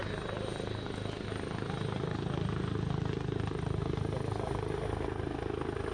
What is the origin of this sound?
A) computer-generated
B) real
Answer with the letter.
B